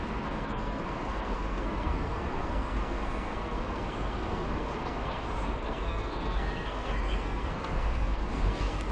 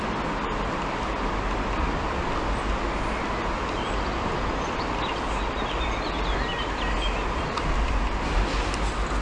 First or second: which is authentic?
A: second